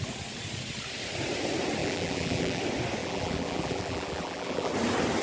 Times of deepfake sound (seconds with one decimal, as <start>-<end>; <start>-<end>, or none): 1.8-2.6; 3.0-4.7

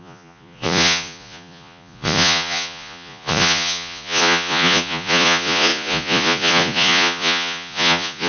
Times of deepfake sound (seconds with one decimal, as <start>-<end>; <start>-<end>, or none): 0.0-8.3

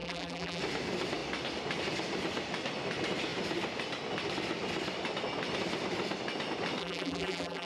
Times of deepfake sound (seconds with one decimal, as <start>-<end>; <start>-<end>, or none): 0.0-0.6; 6.8-7.7

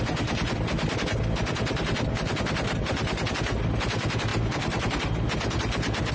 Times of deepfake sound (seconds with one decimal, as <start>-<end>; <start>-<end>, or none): none

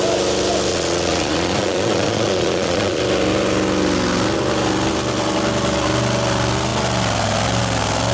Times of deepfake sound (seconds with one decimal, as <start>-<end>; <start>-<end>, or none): 0.7-3.0

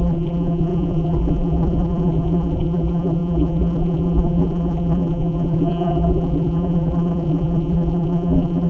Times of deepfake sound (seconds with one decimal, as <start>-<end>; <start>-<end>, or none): 0.0-8.7

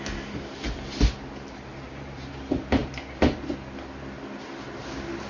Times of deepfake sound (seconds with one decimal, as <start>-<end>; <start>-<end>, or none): 1.7-2.3

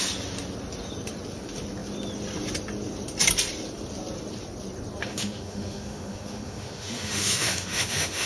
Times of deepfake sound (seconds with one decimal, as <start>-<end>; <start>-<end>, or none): 5.0-8.3